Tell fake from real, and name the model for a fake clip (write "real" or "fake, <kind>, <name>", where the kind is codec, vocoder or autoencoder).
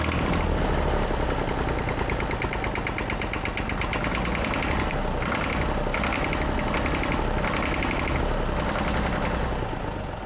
real